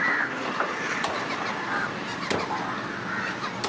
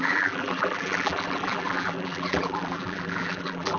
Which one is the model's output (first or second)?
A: second